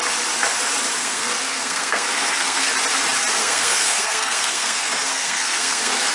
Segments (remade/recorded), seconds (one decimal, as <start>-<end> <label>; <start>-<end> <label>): 0.0-1.0 recorded; 1.0-2.7 remade; 2.7-3.4 recorded; 3.4-6.1 remade